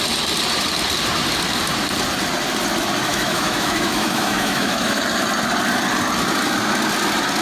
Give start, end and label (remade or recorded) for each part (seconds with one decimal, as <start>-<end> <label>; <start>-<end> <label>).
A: 0.0-3.1 recorded; 3.1-5.0 remade; 5.0-7.4 recorded